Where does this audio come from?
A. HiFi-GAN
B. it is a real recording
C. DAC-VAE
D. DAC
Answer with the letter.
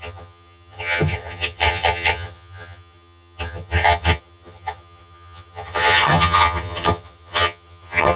A